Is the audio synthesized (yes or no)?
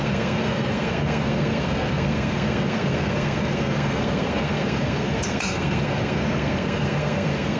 yes